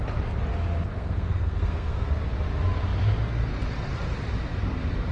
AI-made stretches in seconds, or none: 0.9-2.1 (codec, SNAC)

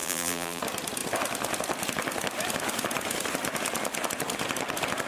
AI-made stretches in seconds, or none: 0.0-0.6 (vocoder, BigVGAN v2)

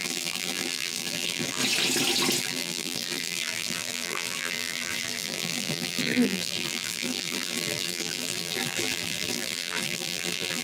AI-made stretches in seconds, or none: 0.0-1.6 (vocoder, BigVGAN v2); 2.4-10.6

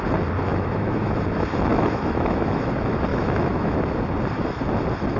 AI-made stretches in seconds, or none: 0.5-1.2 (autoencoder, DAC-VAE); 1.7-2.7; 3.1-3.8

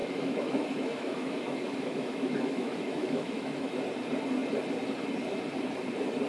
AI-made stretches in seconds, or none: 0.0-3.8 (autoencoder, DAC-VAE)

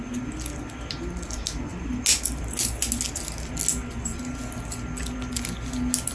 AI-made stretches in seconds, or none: none

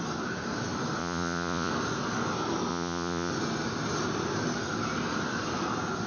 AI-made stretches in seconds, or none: 1.0-1.7 (vocoder, Vocos); 2.7-3.3

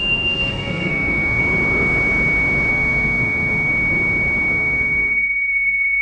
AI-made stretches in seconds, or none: 0.0-1.4 (codec, SNAC); 2.7-3.7; 4.5-6.0